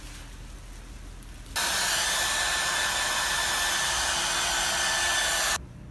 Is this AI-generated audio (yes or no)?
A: no